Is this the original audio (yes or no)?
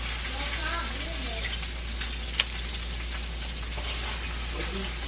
yes